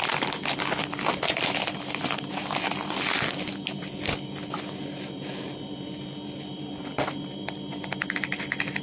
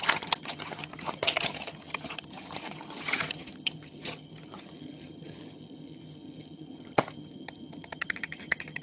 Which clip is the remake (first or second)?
second